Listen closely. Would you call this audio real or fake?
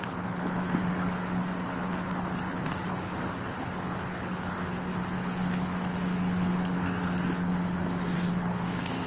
fake